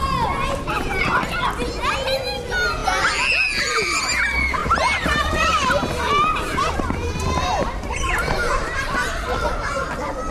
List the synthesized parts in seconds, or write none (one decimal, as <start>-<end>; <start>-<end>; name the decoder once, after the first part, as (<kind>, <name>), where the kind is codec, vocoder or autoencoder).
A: 4.6-5.7 (vocoder, BigVGAN v2); 6.6-9.6